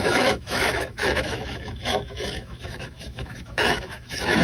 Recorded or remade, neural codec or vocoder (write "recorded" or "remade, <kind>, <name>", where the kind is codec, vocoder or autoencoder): remade, autoencoder, DAC-VAE